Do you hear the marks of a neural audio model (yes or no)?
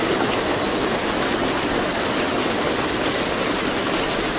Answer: no